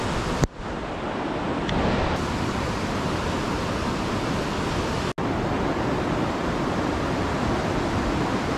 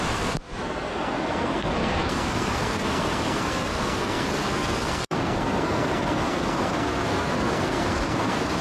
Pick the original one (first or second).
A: first